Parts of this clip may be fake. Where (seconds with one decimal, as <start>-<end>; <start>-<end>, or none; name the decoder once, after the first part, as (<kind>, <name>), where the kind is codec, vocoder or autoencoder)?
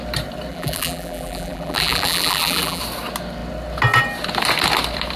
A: 0.5-2.8 (vocoder, BigVGAN v2)